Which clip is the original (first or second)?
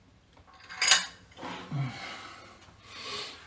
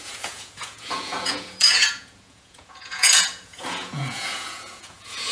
first